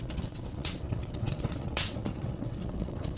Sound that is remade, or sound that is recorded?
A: remade